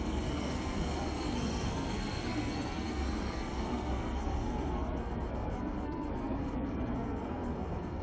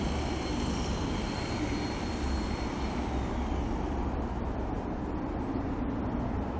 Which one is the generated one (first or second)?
first